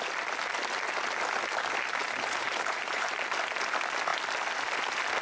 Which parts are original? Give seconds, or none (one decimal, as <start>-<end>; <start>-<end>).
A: 0.0-2.0; 3.2-5.2